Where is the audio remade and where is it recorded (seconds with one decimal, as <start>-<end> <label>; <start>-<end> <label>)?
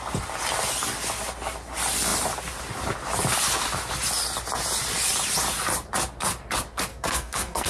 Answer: 0.0-6.9 recorded; 6.9-7.7 remade